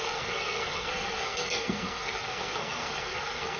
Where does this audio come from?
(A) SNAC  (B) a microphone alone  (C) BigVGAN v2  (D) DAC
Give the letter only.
A